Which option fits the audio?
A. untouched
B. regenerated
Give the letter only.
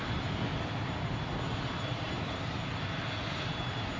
A